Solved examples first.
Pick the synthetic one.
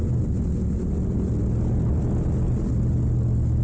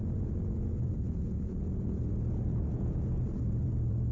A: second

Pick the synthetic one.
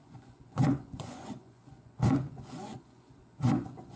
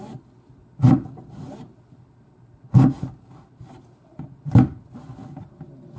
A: first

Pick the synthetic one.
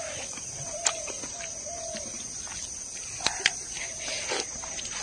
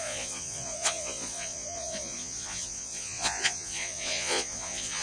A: second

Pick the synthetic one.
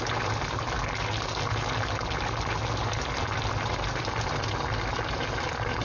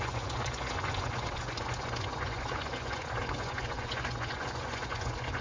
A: second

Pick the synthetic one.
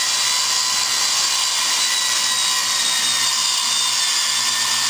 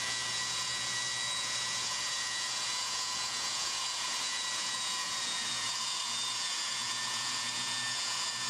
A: second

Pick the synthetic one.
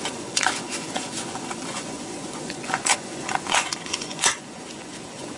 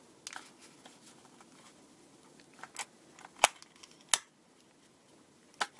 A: first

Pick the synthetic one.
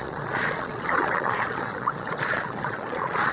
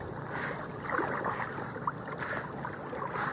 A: first